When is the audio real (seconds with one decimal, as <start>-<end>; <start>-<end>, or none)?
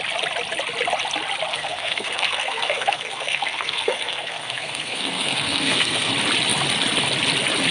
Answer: 0.0-1.5; 6.1-7.7